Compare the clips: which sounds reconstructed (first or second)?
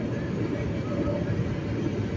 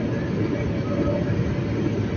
first